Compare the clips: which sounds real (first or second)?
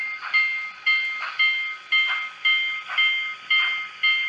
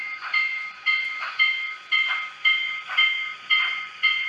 first